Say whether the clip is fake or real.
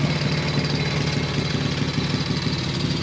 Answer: real